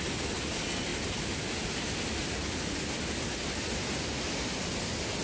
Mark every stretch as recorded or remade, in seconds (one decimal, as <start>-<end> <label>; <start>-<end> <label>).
0.0-5.2 recorded